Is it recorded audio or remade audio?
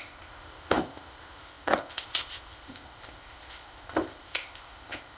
remade